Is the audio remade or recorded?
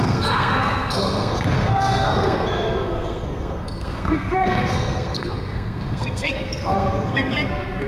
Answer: remade